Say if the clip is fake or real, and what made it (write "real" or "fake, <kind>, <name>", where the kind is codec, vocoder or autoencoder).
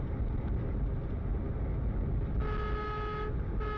real